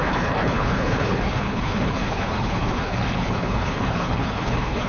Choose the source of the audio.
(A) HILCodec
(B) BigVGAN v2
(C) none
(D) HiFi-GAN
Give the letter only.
A